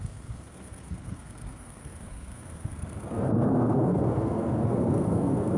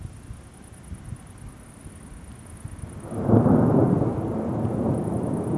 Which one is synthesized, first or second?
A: first